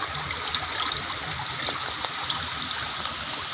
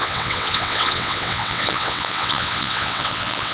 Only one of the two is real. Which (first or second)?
first